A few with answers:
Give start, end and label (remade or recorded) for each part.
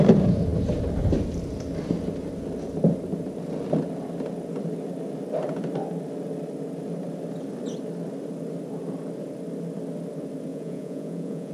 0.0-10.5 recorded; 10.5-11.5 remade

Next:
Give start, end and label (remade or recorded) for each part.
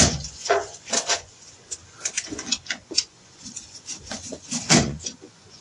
0.0-5.6 remade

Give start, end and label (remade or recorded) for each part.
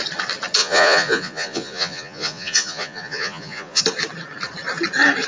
0.0-0.6 recorded; 0.6-3.8 remade; 3.8-5.3 recorded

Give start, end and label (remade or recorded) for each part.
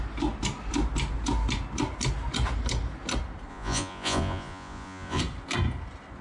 0.0-3.5 recorded; 3.5-5.2 remade; 5.2-6.2 recorded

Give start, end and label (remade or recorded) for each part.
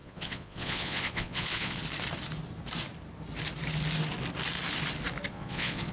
0.0-1.8 remade; 1.8-5.3 recorded; 5.3-5.9 remade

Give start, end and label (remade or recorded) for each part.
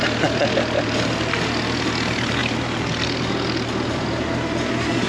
0.0-5.1 recorded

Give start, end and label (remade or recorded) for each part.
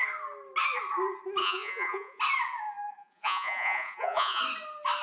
0.0-1.4 recorded; 1.4-2.2 remade; 2.2-2.9 recorded; 2.9-4.4 remade; 4.4-5.0 recorded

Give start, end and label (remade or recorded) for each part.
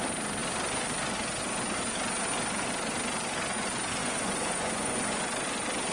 0.0-4.0 recorded; 4.0-5.2 remade; 5.2-5.9 recorded